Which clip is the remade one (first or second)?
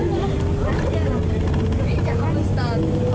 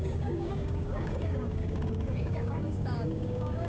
second